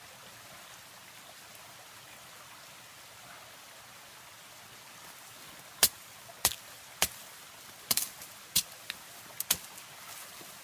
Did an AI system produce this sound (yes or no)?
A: no